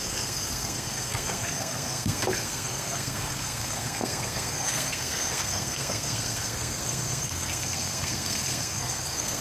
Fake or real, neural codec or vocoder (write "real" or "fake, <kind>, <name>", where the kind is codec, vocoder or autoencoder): fake, codec, SNAC